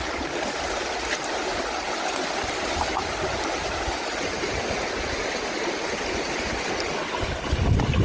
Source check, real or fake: real